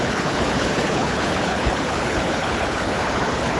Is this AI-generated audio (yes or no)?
yes